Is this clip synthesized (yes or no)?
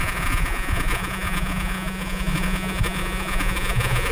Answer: yes